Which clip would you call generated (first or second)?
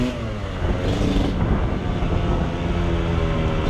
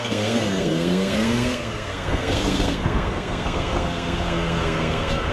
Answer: second